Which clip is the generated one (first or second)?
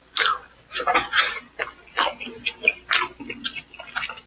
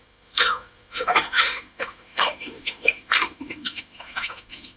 second